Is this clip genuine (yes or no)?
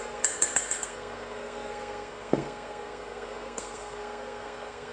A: no